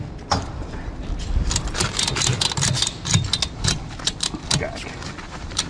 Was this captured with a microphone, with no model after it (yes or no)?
yes